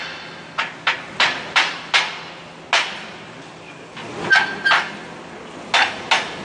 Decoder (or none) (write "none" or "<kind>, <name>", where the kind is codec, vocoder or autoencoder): none